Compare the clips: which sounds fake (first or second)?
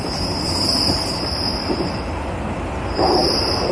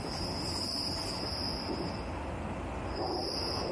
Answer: first